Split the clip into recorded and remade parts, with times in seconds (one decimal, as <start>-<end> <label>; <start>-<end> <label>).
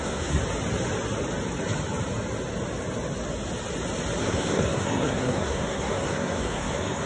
0.0-0.4 remade; 0.4-4.2 recorded; 4.2-7.1 remade